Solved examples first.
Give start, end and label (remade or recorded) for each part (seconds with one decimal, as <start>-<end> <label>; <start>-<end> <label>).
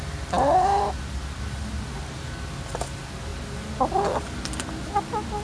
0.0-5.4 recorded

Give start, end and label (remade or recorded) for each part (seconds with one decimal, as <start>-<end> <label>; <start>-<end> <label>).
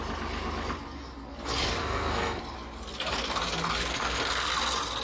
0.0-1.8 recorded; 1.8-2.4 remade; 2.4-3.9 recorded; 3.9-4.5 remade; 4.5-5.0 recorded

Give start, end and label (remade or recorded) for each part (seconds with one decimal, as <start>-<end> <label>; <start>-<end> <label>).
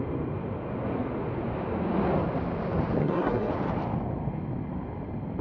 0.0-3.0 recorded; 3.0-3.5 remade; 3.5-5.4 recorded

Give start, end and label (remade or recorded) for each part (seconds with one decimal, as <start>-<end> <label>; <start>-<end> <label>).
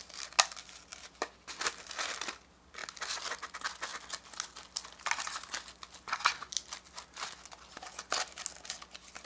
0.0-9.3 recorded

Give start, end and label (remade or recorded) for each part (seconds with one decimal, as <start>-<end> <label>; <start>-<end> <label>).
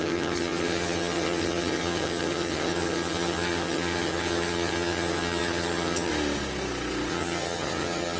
0.0-6.1 remade; 6.1-7.1 recorded; 7.1-8.2 remade